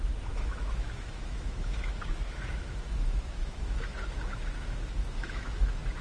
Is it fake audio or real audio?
fake